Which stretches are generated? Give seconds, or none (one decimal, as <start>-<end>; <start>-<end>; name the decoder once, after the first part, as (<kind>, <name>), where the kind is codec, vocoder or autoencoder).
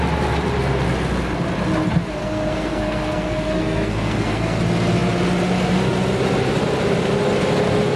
2.2-4.6 (codec, SNAC)